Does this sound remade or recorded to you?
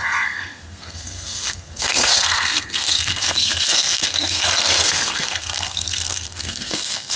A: remade